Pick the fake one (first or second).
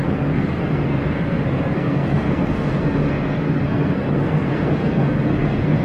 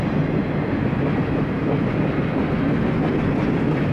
first